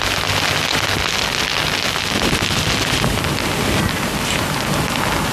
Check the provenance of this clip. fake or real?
real